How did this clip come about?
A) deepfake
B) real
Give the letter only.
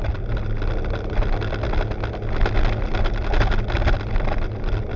B